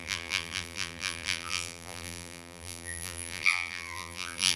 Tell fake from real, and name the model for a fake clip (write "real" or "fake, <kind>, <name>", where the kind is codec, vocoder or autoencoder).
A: fake, vocoder, BigVGAN v2